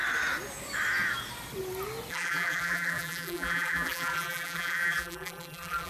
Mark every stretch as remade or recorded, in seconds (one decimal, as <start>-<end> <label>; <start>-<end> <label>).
0.0-2.1 recorded; 2.1-5.9 remade